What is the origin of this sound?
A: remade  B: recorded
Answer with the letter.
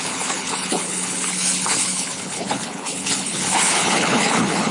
A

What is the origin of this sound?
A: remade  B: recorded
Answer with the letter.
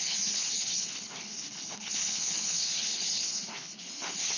A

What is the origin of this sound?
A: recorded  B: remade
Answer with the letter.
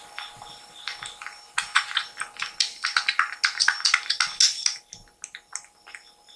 A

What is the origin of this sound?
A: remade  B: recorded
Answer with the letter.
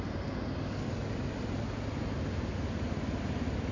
B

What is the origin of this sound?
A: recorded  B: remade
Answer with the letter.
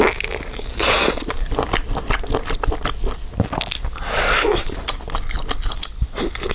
A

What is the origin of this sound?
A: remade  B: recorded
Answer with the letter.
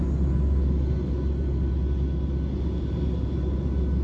B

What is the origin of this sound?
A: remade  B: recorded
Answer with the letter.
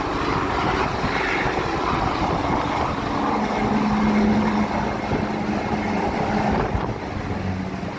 B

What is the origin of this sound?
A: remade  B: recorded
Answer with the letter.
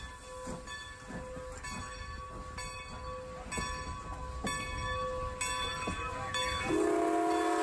B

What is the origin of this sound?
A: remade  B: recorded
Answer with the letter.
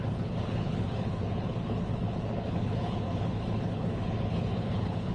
A